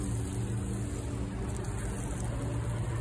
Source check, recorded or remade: recorded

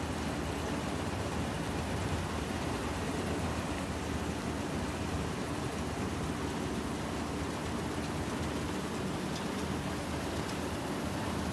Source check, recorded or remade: recorded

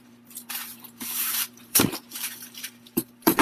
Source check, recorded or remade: remade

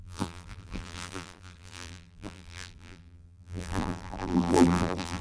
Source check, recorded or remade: remade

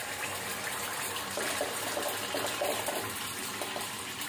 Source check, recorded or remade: remade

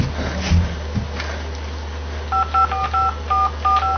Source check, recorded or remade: recorded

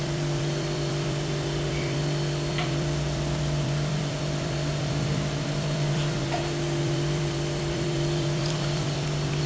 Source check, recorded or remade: remade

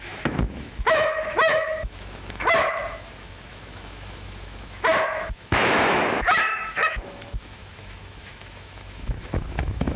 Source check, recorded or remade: remade